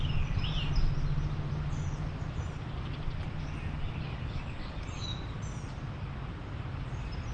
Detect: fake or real real